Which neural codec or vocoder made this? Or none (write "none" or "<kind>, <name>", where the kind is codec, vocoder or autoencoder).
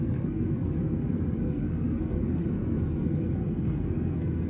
codec, SNAC